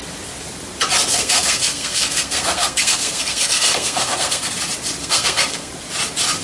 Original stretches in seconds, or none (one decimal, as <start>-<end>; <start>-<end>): 0.0-1.1; 4.5-5.0; 5.7-6.4